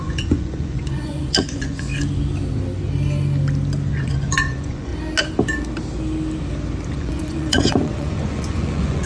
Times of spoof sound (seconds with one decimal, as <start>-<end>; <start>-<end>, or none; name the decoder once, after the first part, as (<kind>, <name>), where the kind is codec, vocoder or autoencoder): 0.0-1.9 (vocoder, Vocos); 3.9-4.9; 6.9-9.1